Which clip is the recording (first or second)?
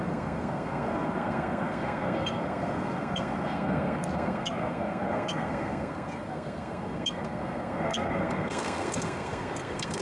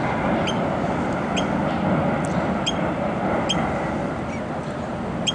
second